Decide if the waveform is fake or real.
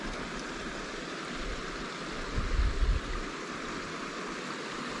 real